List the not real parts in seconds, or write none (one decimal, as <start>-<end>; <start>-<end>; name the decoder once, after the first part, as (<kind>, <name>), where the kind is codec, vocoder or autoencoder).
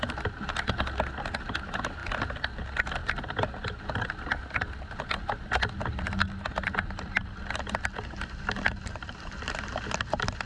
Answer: none